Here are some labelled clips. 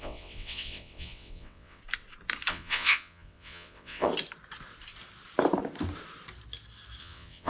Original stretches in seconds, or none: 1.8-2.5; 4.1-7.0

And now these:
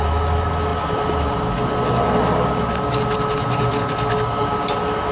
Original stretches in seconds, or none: 0.0-5.1

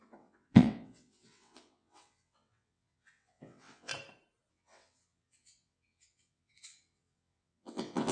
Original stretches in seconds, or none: 3.9-4.5

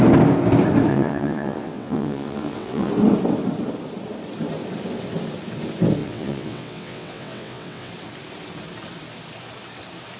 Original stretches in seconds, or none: 0.0-0.9; 2.9-6.0; 7.9-10.2